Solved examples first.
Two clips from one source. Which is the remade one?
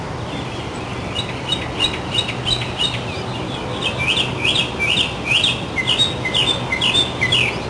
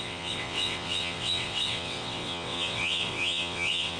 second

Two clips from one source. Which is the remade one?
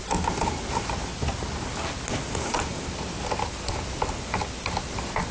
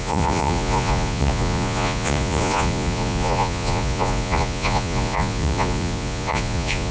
second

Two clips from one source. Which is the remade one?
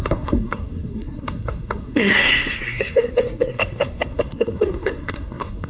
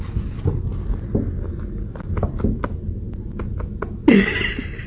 first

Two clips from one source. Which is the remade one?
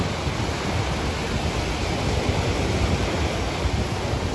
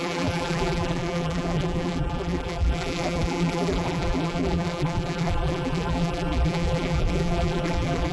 second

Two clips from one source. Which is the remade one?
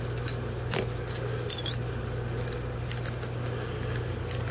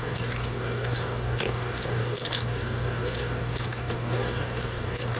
second